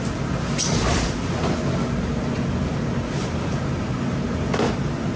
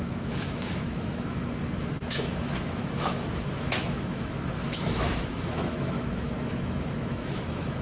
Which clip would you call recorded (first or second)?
first